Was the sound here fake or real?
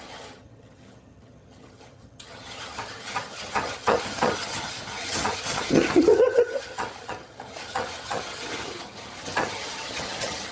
fake